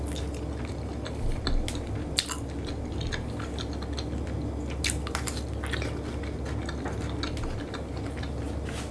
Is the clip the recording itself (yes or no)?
yes